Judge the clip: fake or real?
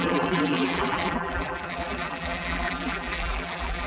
fake